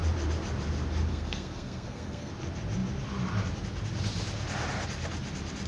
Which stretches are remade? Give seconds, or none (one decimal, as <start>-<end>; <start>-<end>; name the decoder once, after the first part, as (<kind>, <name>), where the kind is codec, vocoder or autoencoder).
1.1-2.3 (codec, SNAC)